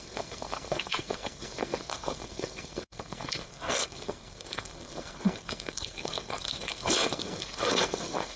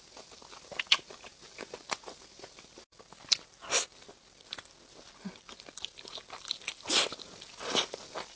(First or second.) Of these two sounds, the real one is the second